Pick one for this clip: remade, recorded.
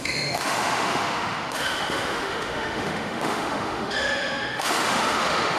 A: remade